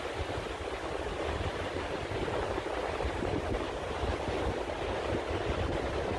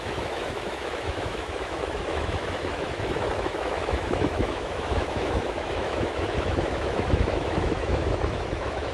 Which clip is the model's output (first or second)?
second